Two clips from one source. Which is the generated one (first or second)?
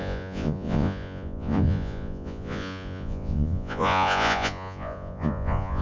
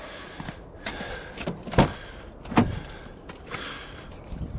first